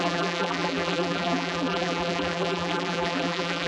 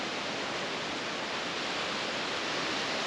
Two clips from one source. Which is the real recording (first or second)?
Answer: second